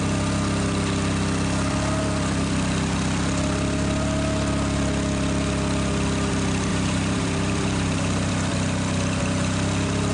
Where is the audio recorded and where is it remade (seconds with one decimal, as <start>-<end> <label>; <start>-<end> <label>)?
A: 0.0-6.7 recorded; 6.7-8.3 remade; 8.3-10.1 recorded